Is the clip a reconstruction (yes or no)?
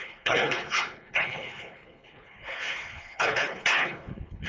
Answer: yes